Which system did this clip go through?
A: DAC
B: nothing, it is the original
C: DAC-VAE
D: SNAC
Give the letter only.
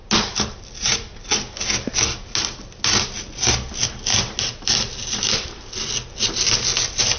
B